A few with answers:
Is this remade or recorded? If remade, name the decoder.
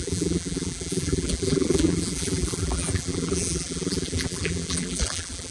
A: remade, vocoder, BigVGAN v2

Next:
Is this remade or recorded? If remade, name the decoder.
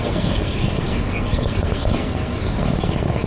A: remade, codec, SNAC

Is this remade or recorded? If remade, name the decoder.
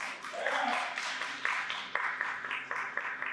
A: recorded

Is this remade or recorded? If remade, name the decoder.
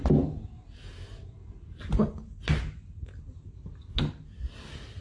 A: recorded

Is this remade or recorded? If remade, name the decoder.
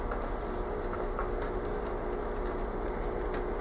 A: recorded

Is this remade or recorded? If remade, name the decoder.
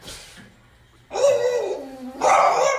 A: recorded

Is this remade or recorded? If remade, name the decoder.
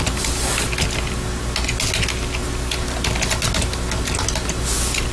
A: recorded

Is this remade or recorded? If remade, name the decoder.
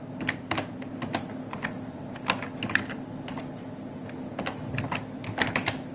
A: recorded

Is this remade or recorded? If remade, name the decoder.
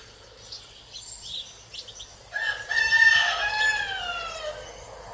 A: recorded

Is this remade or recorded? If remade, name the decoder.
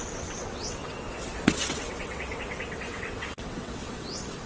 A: remade, vocoder, WaveNeXt